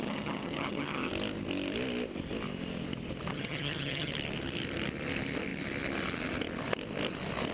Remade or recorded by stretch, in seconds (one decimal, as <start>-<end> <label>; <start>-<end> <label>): 0.0-1.1 remade; 1.1-3.3 recorded; 3.3-4.1 remade; 4.1-7.5 recorded